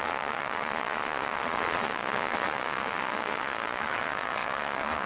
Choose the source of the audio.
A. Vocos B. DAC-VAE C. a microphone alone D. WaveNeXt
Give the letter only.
A